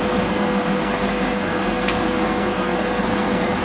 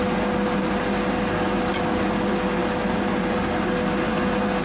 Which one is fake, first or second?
first